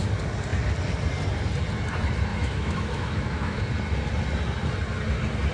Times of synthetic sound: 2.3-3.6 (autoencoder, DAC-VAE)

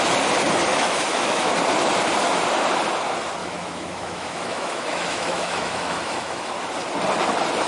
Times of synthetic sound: 0.7-1.5 (autoencoder, DAC-VAE); 3.4-6.5